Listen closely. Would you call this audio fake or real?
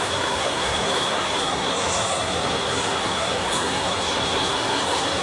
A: fake